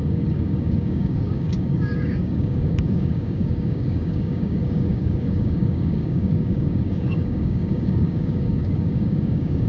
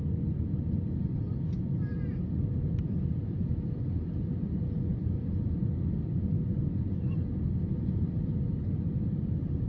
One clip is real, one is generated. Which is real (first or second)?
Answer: second